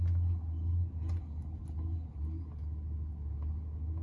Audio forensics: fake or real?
real